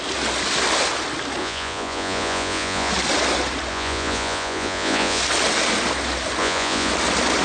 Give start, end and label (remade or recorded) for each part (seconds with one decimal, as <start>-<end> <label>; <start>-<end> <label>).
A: 0.0-1.4 recorded; 1.4-2.9 remade; 2.9-3.7 recorded; 3.7-5.2 remade; 5.2-6.4 recorded; 6.4-6.9 remade; 6.9-7.4 recorded